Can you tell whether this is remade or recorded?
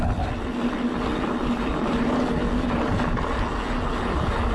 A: recorded